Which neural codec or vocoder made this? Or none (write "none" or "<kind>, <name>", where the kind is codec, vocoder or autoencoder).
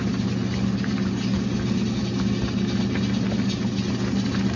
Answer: none